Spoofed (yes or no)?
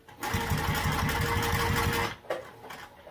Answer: no